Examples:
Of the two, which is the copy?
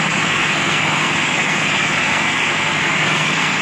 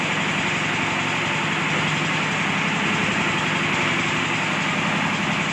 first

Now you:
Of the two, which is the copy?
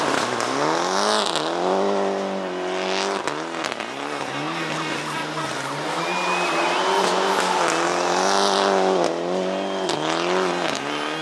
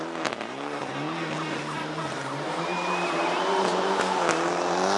second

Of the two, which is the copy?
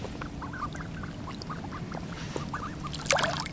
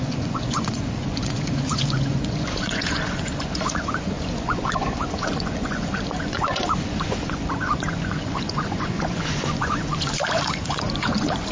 second